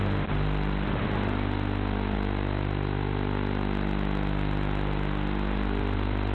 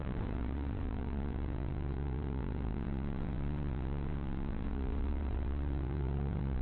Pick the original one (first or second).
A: first